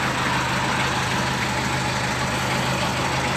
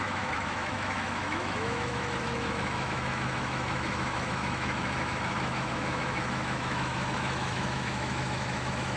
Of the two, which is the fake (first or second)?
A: second